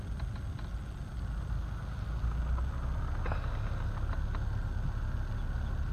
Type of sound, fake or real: real